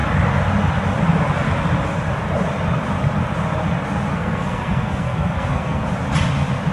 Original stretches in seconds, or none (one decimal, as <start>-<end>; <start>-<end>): 0.0-4.1; 5.8-6.7